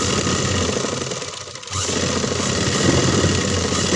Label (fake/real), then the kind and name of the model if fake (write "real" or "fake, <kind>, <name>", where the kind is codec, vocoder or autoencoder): real